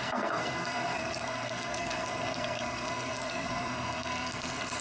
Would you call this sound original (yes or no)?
no